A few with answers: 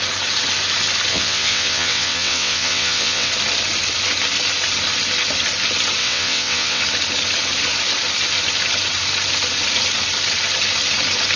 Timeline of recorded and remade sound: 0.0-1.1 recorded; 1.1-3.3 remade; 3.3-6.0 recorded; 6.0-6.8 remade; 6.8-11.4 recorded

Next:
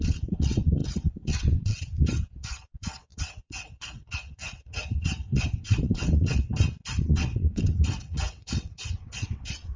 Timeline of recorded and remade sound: 0.0-6.5 remade; 6.5-7.0 recorded; 7.0-9.8 remade

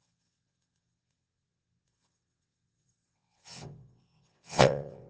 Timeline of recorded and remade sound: 0.0-5.1 remade

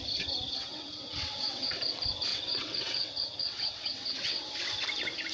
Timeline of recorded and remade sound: 0.0-0.5 recorded; 0.5-1.8 remade; 1.8-2.3 recorded; 2.3-4.5 remade; 4.5-5.3 recorded

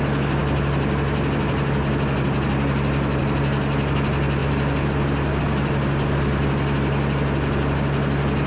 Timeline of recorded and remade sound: 0.0-8.5 recorded

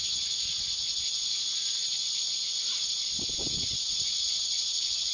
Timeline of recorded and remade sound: 0.0-3.4 recorded; 3.4-5.1 remade

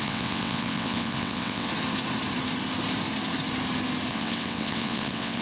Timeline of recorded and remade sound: 0.0-1.7 remade; 1.7-4.1 recorded; 4.1-5.4 remade

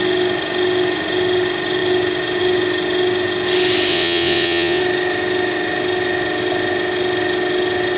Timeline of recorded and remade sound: 0.0-3.9 recorded; 3.9-4.8 remade; 4.8-8.0 recorded